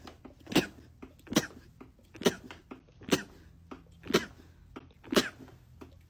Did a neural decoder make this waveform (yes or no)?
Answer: no